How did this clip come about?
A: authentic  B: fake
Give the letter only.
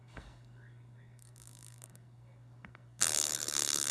B